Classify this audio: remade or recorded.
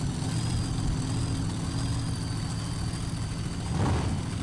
recorded